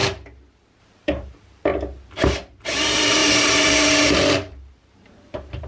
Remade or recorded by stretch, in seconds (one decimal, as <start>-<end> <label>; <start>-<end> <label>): 0.0-0.8 recorded; 0.8-1.7 remade; 1.7-2.6 recorded; 2.6-5.7 remade